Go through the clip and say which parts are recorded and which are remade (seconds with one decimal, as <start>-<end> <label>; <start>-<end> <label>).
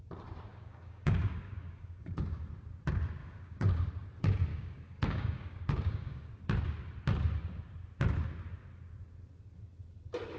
0.0-0.5 recorded; 0.5-2.4 remade; 2.4-3.2 recorded; 3.2-3.9 remade; 3.9-4.5 recorded; 4.5-6.3 remade; 6.3-10.4 recorded